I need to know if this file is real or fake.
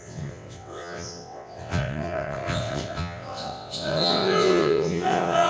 fake